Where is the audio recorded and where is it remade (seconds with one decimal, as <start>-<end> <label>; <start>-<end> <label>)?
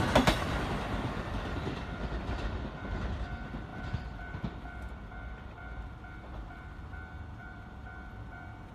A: 0.0-3.7 recorded; 3.7-6.9 remade; 6.9-7.4 recorded; 7.4-8.7 remade